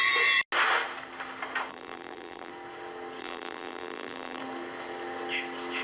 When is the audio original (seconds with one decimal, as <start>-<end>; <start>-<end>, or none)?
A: 0.0-1.7; 2.5-3.2; 4.4-5.8